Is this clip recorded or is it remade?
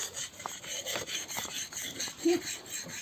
remade